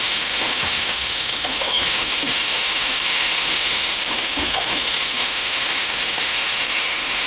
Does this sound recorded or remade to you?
remade